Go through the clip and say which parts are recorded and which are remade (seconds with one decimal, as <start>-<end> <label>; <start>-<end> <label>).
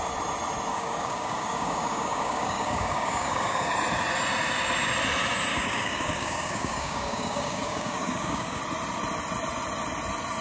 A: 0.0-0.7 recorded; 0.7-3.7 remade; 3.7-5.5 recorded; 5.5-8.6 remade; 8.6-10.4 recorded